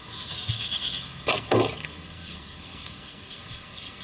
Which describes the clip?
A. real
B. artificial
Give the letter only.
B